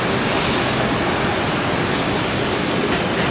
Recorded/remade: recorded